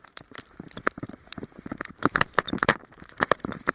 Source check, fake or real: fake